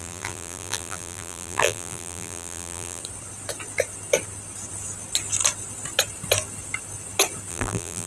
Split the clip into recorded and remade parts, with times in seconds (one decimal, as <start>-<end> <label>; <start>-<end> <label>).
0.0-3.0 remade; 3.0-7.5 recorded; 7.5-8.1 remade